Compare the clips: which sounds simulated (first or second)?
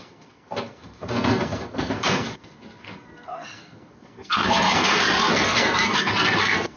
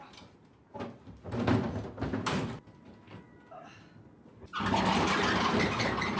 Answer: first